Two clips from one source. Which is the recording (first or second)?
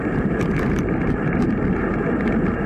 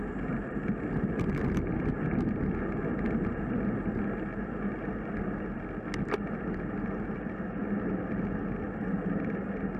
second